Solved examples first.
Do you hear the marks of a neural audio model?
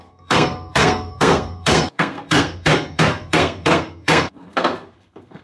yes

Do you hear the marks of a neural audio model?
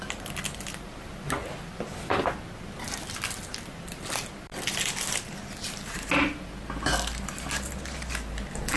no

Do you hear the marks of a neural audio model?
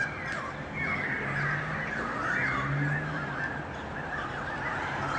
no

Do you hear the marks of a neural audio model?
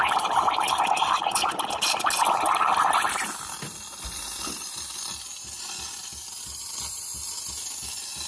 no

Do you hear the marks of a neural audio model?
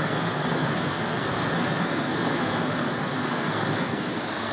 yes